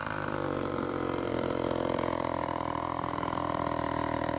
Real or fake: fake